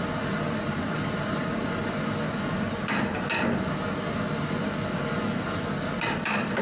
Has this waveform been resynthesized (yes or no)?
no